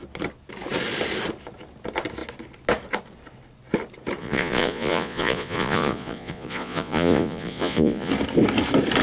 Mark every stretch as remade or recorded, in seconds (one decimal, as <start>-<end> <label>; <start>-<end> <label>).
0.0-4.2 recorded; 4.2-8.1 remade; 8.1-9.0 recorded